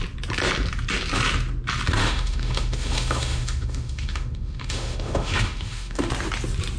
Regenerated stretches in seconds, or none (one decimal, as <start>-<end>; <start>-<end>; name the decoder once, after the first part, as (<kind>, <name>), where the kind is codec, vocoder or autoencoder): 2.0-6.1 (autoencoder, DAC-VAE)